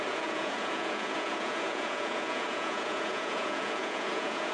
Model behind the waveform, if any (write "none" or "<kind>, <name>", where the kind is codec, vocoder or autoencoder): vocoder, Vocos